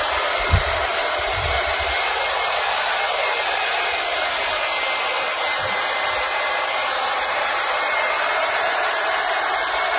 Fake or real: fake